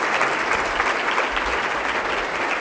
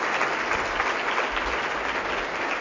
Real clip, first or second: second